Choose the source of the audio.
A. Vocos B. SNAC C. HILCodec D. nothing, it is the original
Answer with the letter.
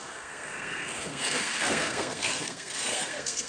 B